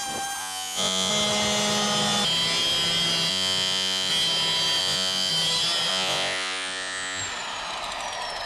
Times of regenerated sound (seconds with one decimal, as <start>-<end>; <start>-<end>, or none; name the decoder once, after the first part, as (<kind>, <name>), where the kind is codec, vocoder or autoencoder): 0.4-1.1 (vocoder, Vocos); 3.3-4.1; 4.8-5.3; 5.9-7.2